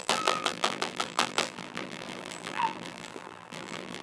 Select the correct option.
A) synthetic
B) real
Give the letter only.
A